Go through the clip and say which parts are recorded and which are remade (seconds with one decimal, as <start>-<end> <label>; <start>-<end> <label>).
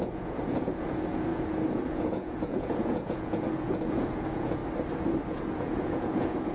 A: 0.0-4.6 remade; 4.6-5.3 recorded; 5.3-6.5 remade